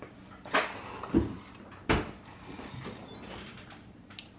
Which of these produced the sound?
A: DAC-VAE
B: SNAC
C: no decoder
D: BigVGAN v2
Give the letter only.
C